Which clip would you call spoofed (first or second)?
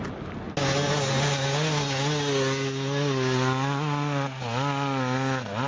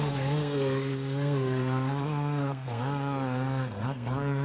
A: second